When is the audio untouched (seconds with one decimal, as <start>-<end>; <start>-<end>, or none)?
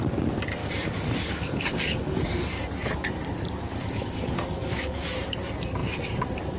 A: 0.0-0.6; 2.6-3.8; 5.1-6.6